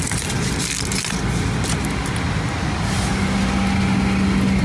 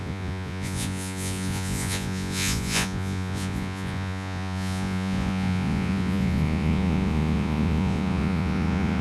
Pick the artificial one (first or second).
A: second